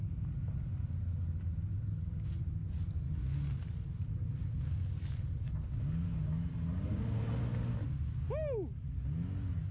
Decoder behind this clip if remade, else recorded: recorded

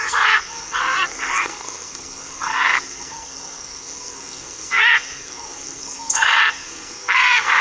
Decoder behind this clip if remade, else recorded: remade, codec, SNAC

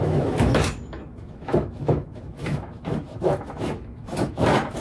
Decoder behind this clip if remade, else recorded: remade, autoencoder, DAC-VAE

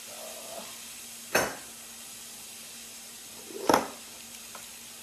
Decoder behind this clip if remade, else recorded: recorded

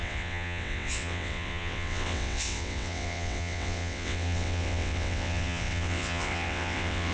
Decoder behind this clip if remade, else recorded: remade, vocoder, WaveNeXt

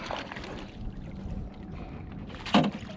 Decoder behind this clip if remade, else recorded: recorded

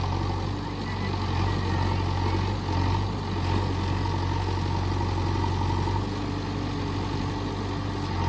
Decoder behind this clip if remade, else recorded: recorded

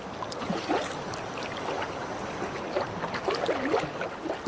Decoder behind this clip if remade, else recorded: recorded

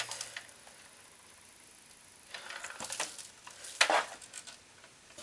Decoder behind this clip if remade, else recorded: recorded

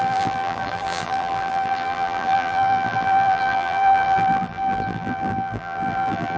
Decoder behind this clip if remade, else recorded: remade, vocoder, BigVGAN v2